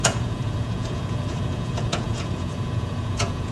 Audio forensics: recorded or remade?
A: remade